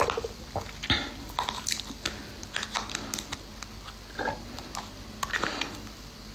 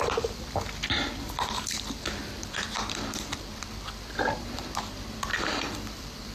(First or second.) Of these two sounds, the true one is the first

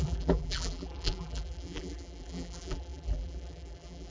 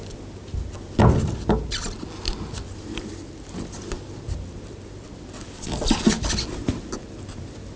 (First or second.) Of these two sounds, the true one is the second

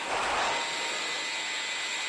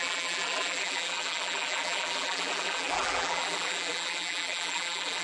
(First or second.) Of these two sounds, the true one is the first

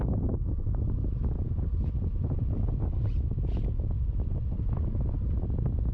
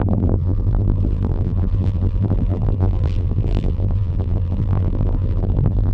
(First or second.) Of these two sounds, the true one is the first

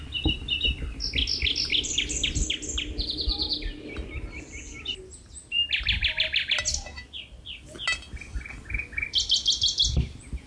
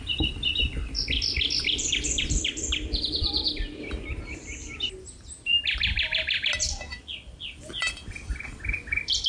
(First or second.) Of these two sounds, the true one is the first